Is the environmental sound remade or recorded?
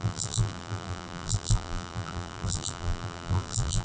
remade